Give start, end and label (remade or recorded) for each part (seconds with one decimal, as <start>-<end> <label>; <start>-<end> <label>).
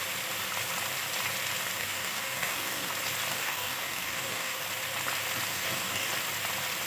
0.0-1.8 recorded; 1.8-2.9 remade; 2.9-3.3 recorded; 3.3-4.6 remade; 4.6-5.5 recorded; 5.5-6.1 remade; 6.1-6.9 recorded